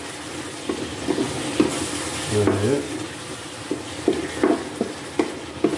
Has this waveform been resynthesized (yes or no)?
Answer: no